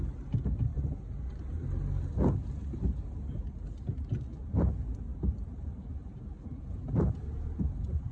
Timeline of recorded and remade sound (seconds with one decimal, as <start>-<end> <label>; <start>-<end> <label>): 0.0-0.7 recorded; 0.7-1.9 remade; 1.9-5.1 recorded; 5.1-7.1 remade; 7.1-8.1 recorded